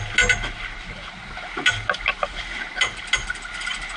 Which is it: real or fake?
real